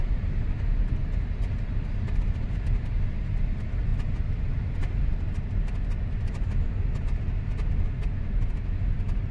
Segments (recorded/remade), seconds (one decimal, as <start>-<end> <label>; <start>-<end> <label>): 0.0-9.3 recorded